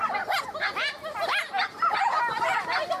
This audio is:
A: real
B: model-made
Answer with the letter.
A